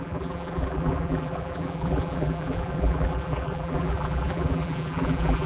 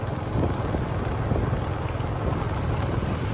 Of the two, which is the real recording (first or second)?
second